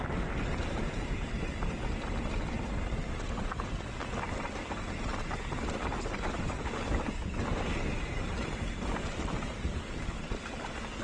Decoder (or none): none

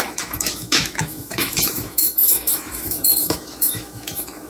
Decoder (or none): autoencoder, DAC-VAE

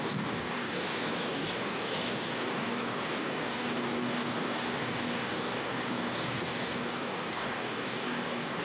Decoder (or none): codec, DAC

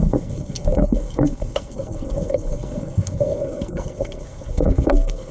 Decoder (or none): codec, SNAC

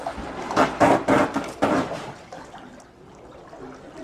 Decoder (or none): none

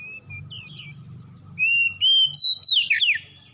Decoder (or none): none